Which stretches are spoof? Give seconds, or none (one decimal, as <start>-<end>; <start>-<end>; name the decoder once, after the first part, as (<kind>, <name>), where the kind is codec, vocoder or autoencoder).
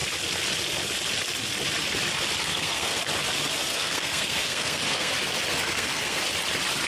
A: 2.4-3.0 (codec, SNAC); 3.7-5.1; 5.5-6.2